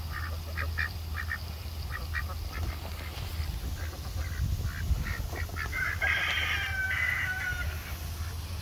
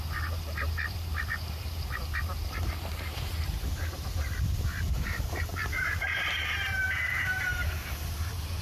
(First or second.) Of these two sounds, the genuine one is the first